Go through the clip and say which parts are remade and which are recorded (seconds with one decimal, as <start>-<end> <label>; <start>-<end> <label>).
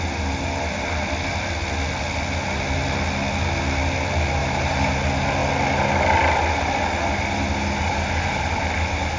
0.0-4.4 recorded; 4.4-4.9 remade; 4.9-9.2 recorded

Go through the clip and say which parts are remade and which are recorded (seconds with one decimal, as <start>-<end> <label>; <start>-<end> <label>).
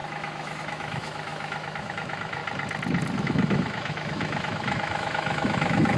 0.0-2.4 remade; 2.4-3.2 recorded; 3.2-6.0 remade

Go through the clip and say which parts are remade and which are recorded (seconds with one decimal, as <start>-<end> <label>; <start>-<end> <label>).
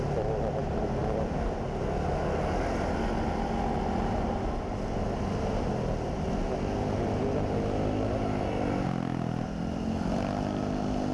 0.0-11.1 recorded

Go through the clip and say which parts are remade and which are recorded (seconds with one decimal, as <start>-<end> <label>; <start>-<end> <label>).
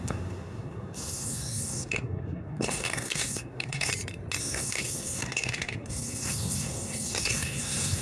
0.0-3.9 remade; 3.9-4.4 recorded; 4.4-8.0 remade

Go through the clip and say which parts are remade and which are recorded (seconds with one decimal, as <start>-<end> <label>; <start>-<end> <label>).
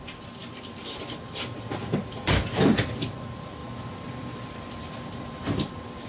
0.0-6.1 remade